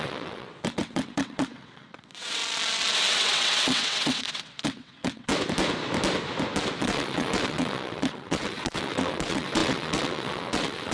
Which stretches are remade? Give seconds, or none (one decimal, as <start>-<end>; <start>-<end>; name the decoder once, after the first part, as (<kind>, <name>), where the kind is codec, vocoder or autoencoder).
0.0-2.4 (vocoder, WaveNeXt); 3.1-5.3; 6.8-10.9